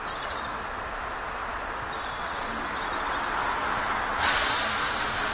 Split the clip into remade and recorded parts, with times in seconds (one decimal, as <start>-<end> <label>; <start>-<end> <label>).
0.0-5.3 recorded